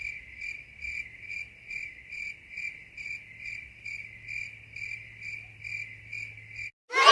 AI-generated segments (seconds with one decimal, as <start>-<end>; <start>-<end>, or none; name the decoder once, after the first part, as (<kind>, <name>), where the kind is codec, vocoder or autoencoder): none